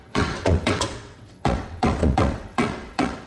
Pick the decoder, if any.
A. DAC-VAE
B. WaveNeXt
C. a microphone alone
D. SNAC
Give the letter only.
B